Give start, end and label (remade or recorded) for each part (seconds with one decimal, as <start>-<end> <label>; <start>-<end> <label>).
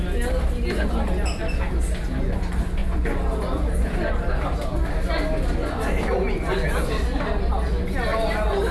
0.0-8.7 recorded